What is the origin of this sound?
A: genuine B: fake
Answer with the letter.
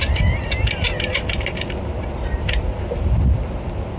A